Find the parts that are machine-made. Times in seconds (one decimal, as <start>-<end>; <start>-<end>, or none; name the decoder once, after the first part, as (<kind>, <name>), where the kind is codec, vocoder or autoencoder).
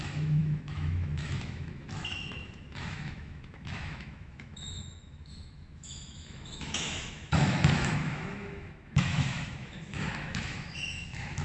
0.0-11.4 (autoencoder, DAC-VAE)